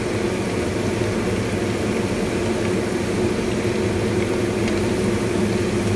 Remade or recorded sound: recorded